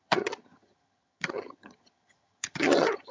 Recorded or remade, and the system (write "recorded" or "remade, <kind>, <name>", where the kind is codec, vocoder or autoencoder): remade, vocoder, HiFi-GAN